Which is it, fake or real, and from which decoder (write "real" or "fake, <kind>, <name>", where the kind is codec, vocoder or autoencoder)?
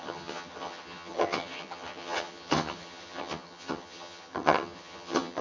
fake, vocoder, HiFi-GAN